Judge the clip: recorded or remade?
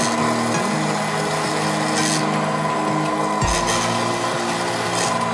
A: recorded